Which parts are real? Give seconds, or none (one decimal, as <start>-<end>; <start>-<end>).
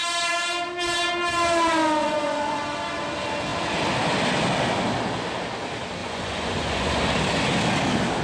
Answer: 0.0-2.0; 2.6-6.0; 7.0-8.2